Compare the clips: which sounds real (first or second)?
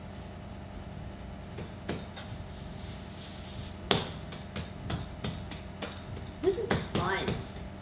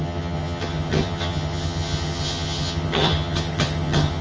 first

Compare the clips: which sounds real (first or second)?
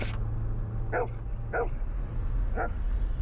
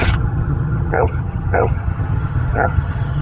first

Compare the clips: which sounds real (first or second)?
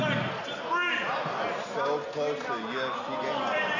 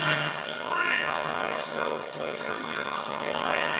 first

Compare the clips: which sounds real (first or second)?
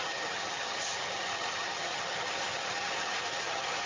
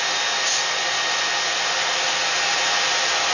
second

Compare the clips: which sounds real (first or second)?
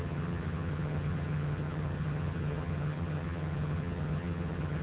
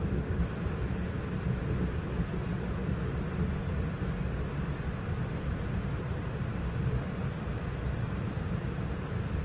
second